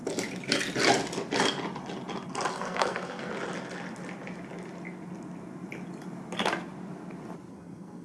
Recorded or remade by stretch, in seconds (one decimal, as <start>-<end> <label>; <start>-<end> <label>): 0.0-2.5 recorded; 2.5-3.3 remade; 3.3-7.5 recorded; 7.5-8.0 remade

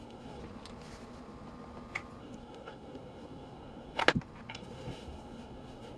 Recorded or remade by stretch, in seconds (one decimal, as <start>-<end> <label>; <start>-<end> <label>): 0.0-0.4 remade; 0.4-2.2 recorded; 2.2-4.0 remade; 4.0-4.5 recorded; 4.5-6.0 remade

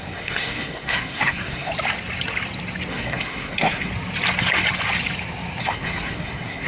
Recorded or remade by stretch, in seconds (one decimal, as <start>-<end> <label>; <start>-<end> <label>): 0.0-1.7 remade; 1.7-2.9 recorded; 2.9-3.9 remade; 3.9-5.6 recorded; 5.6-6.7 remade

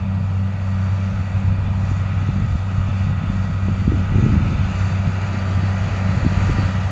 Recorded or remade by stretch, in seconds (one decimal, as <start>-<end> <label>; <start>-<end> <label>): 0.0-6.9 recorded

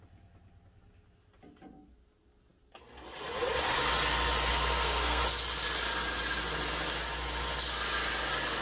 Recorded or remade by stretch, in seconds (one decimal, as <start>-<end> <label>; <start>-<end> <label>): 0.0-4.5 recorded; 4.5-5.2 remade; 5.2-8.6 recorded

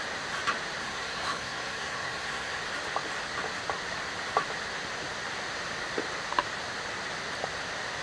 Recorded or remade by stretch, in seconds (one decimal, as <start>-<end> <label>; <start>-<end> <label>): 0.0-0.8 recorded; 0.8-2.6 remade; 2.6-8.0 recorded

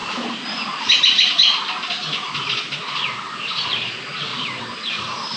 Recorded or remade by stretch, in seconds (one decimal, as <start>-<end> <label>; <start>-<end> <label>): 0.0-5.4 recorded